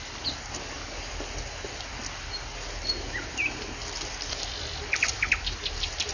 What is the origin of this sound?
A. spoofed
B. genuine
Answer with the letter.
B